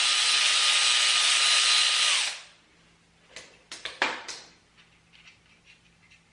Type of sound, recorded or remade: recorded